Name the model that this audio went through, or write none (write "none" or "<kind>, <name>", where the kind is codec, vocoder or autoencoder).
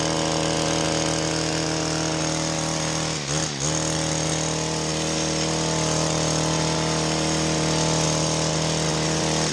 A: none